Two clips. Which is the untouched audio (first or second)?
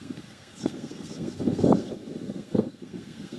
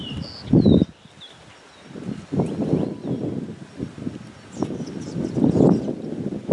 second